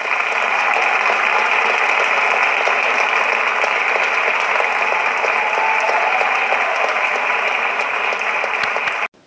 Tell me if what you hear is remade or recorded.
recorded